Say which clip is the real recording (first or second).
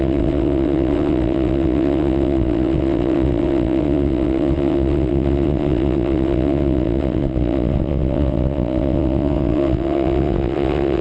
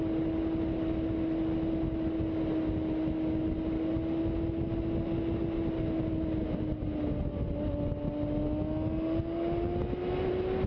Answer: second